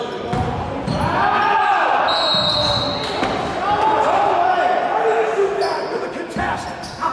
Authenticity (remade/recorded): recorded